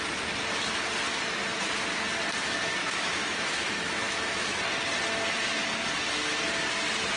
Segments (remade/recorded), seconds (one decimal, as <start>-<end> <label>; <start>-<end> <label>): 0.0-2.8 recorded; 2.8-4.6 remade; 4.6-7.2 recorded